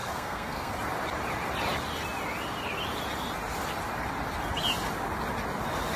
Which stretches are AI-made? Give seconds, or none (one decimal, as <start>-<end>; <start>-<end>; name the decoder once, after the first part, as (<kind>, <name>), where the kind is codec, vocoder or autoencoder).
0.0-0.7 (codec, SNAC)